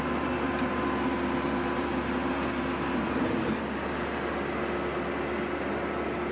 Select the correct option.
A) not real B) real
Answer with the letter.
B